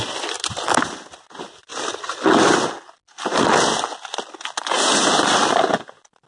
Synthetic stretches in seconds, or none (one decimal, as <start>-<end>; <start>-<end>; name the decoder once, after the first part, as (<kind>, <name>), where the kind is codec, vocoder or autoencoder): none